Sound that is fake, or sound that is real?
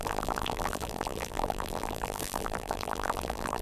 fake